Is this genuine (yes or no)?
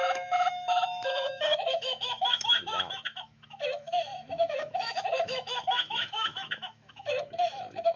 no